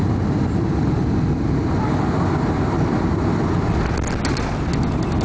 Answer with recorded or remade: recorded